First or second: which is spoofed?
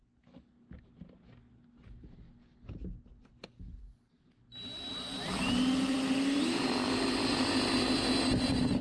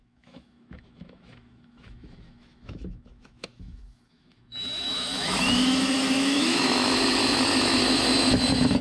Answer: second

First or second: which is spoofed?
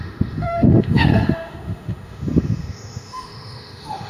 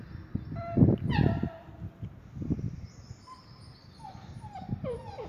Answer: first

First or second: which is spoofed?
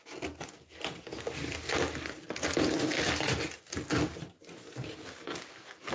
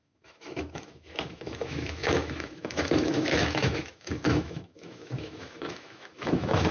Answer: second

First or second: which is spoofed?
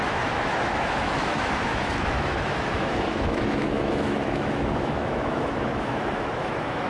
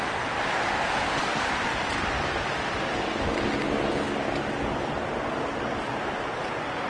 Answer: first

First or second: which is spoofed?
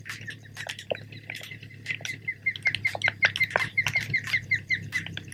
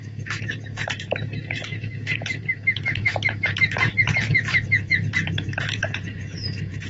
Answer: second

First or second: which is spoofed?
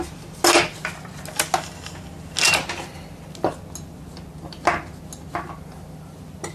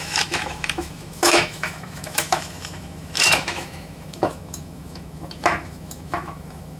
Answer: second